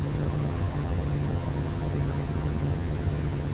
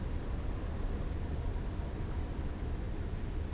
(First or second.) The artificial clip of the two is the first